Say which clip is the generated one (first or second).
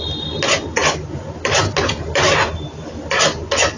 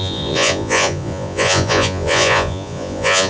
second